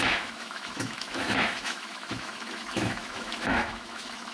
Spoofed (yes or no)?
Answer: yes